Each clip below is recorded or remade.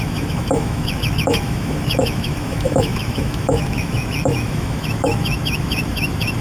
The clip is remade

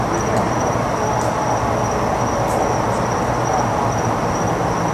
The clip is recorded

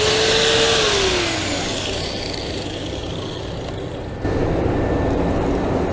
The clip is recorded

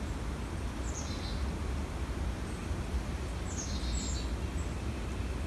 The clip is recorded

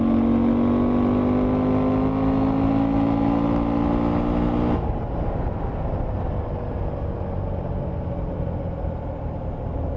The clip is recorded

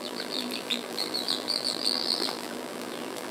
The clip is remade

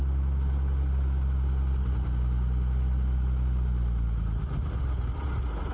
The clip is recorded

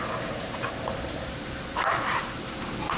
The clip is remade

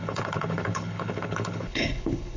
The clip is remade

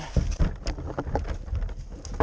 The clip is recorded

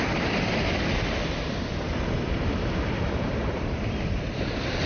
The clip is recorded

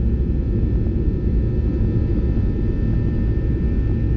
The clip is recorded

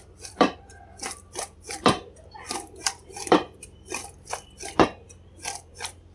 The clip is remade